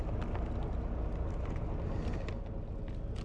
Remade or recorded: recorded